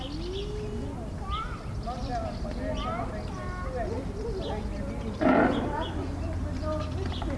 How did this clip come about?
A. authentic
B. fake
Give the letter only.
A